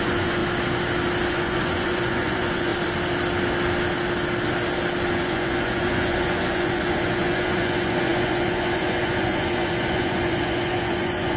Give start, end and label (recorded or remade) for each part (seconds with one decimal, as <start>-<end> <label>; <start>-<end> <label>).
0.0-0.4 remade; 0.4-1.3 recorded; 1.3-2.7 remade; 2.7-5.1 recorded; 5.1-11.4 remade